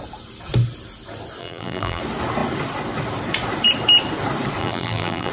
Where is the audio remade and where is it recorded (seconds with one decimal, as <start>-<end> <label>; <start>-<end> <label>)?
0.0-1.4 recorded; 1.4-2.0 remade; 2.0-4.6 recorded; 4.6-5.3 remade